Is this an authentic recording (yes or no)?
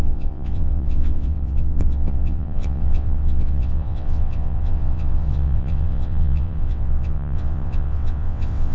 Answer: no